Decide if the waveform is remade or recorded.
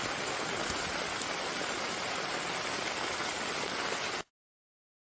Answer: recorded